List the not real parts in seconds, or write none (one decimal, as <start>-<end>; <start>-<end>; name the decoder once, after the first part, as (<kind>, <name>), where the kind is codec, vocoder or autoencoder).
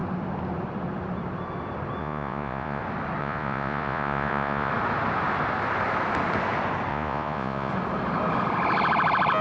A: 2.0-2.8 (vocoder, Vocos); 3.2-4.7; 6.9-7.7